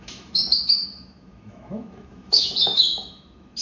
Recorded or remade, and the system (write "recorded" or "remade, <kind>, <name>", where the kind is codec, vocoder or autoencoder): remade, autoencoder, DAC-VAE